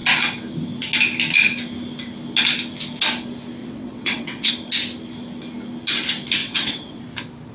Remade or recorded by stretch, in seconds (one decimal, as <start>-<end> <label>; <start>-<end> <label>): 0.0-3.6 recorded; 3.6-4.5 remade; 4.5-6.4 recorded; 6.4-7.0 remade; 7.0-7.5 recorded

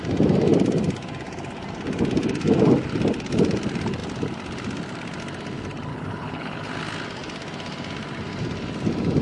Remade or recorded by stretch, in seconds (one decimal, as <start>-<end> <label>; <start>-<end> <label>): 0.0-5.9 recorded; 5.9-6.7 remade; 6.7-9.2 recorded

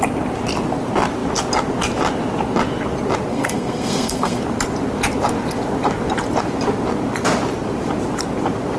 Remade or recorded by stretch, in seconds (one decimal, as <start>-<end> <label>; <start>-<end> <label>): 0.0-3.3 recorded; 3.3-4.4 remade; 4.4-8.8 recorded

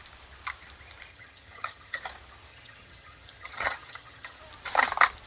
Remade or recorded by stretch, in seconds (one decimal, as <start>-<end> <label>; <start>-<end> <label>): 0.0-1.1 recorded; 1.1-2.0 remade; 2.0-2.5 recorded; 2.5-4.4 remade; 4.4-5.3 recorded